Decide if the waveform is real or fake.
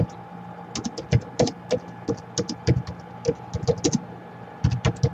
real